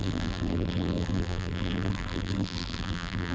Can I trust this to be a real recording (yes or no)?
no